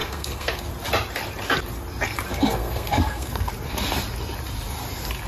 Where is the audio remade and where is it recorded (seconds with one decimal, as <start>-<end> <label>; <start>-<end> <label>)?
0.0-0.7 remade; 0.7-2.3 recorded; 2.3-3.5 remade; 3.5-5.3 recorded